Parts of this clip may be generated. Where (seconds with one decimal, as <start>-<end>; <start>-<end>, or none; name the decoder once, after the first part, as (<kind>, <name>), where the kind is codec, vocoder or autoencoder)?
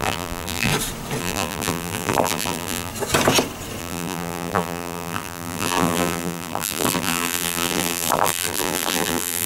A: 0.0-0.7 (vocoder, BigVGAN v2); 1.2-2.9; 3.8-9.5